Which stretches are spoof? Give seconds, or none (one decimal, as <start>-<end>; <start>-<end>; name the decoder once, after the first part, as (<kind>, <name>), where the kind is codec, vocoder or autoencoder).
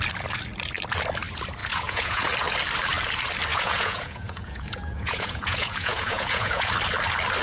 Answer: 1.6-2.3 (vocoder, Vocos); 3.5-6.7